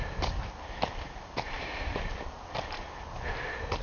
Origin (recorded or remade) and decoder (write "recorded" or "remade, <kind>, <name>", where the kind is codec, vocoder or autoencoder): recorded